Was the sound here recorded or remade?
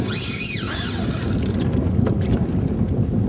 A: recorded